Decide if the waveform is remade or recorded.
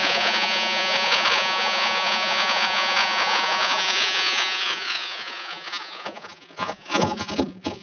remade